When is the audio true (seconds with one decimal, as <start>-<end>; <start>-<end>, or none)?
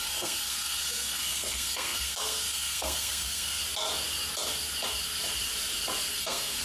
3.6-6.1